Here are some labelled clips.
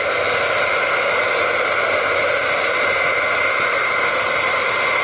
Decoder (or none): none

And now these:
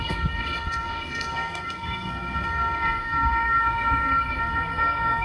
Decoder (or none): codec, SNAC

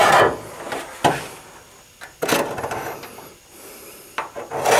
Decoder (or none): none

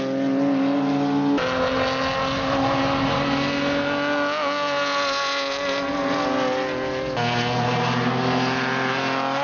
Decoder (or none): none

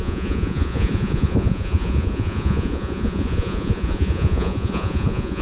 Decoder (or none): vocoder, Vocos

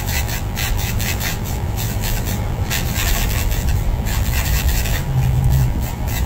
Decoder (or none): vocoder, BigVGAN v2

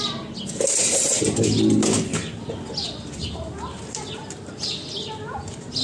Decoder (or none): none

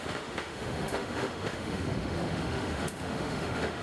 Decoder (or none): autoencoder, DAC-VAE